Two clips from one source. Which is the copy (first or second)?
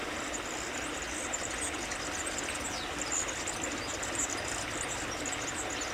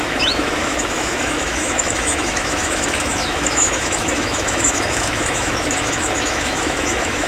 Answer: second